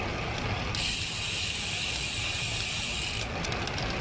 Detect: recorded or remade recorded